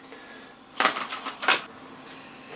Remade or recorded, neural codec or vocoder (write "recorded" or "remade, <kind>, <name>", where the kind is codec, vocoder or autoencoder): recorded